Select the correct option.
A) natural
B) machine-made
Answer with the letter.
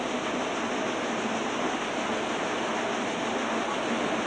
A